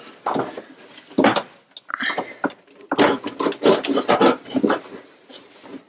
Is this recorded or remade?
recorded